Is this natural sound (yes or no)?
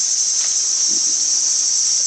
yes